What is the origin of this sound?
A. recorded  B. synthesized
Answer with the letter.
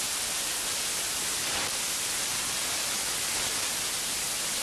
A